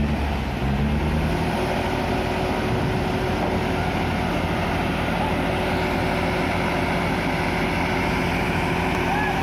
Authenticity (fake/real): real